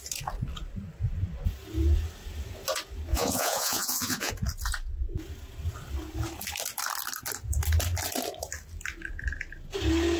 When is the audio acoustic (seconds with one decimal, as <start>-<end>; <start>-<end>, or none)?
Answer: 0.0-3.1; 4.3-10.2